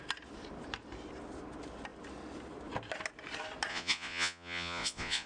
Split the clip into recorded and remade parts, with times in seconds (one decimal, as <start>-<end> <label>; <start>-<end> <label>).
0.0-3.7 recorded; 3.7-5.3 remade